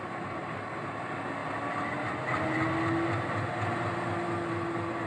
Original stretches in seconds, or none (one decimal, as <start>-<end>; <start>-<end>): 0.0-5.1